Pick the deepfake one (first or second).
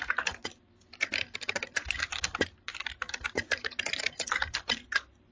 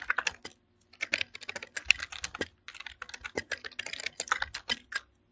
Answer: first